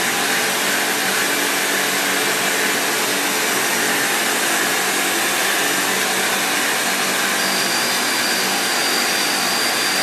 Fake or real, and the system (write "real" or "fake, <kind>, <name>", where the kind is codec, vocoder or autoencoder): real